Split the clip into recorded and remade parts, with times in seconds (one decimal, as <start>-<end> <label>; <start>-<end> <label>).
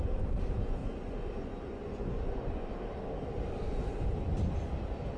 0.0-0.8 recorded; 0.8-2.7 remade; 2.7-5.2 recorded